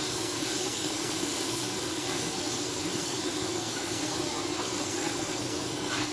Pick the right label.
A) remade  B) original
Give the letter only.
A